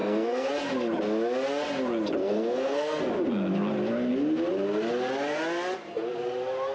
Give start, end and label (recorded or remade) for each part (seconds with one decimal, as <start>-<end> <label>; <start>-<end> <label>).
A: 0.0-0.5 remade; 0.5-2.2 recorded; 2.2-3.0 remade; 3.0-6.7 recorded

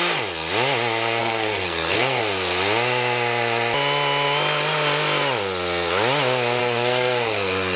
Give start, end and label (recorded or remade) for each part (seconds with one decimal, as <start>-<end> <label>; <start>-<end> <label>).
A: 0.0-1.2 recorded; 1.2-2.2 remade; 2.2-6.6 recorded; 6.6-7.8 remade

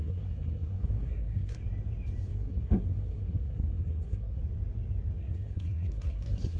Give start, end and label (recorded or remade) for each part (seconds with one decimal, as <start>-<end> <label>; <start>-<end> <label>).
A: 0.0-1.6 remade; 1.6-2.3 recorded; 2.3-4.4 remade; 4.4-5.2 recorded; 5.2-6.6 remade

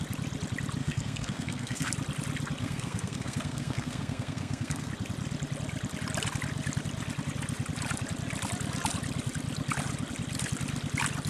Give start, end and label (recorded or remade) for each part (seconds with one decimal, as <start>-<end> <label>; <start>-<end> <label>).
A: 0.0-0.8 recorded; 0.8-1.9 remade; 1.9-2.6 recorded; 2.6-4.9 remade; 4.9-11.3 recorded